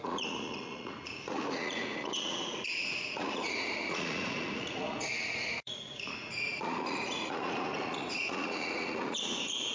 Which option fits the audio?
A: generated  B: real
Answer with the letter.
A